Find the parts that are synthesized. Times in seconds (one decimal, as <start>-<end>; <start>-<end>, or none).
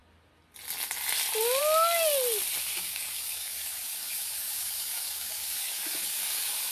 2.6-6.7